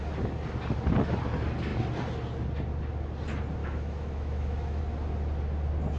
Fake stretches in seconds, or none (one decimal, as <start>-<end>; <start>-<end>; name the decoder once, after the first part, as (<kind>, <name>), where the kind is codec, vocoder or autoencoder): 3.6-4.8 (autoencoder, DAC-VAE)